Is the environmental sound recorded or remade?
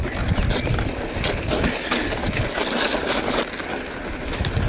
recorded